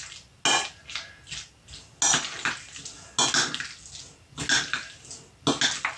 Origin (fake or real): real